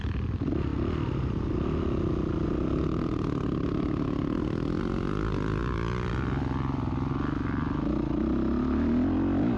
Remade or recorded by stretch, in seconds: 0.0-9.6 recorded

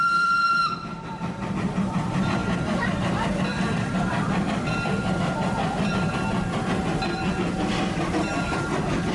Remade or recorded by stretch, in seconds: 0.0-9.1 remade